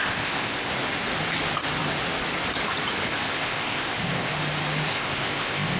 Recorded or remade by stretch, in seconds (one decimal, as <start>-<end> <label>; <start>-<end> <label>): 0.0-0.7 remade; 0.7-3.1 recorded; 3.1-4.3 remade; 4.3-4.9 recorded; 4.9-5.8 remade